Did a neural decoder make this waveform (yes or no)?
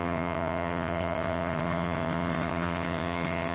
yes